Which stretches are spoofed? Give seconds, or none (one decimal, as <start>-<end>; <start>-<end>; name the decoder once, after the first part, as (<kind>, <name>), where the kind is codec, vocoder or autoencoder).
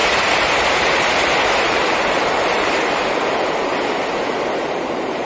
0.0-3.1 (vocoder, BigVGAN v2)